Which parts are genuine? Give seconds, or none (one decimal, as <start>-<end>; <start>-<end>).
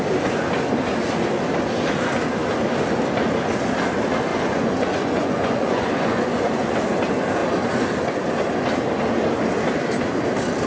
0.0-4.3; 6.7-10.7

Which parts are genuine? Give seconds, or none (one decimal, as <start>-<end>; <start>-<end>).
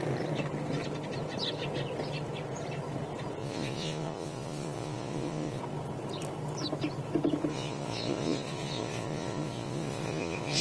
0.0-3.4; 5.6-7.5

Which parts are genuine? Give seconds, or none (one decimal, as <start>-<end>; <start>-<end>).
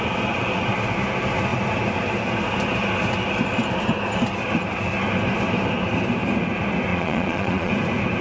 0.0-6.9; 7.7-8.2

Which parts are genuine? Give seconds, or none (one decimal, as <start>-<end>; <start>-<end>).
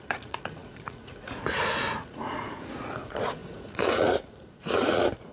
none